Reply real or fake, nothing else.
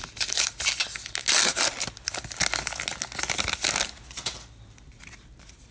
real